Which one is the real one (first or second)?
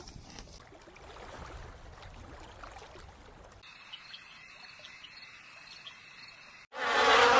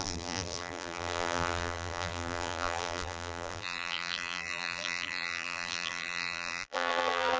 first